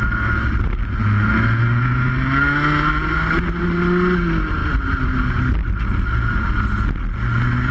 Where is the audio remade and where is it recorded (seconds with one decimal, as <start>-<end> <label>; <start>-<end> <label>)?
0.0-7.7 recorded